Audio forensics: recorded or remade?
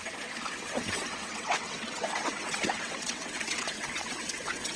remade